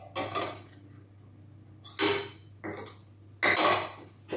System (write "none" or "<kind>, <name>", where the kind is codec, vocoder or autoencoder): none